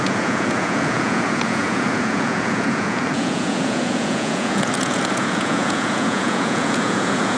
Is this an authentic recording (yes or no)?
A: no